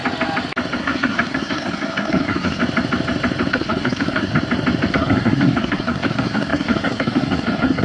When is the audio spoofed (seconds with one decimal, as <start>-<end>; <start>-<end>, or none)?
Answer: 0.8-2.6; 3.5-4.3; 4.9-7.8